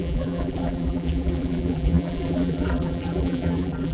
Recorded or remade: remade